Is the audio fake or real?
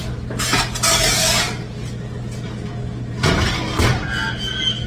real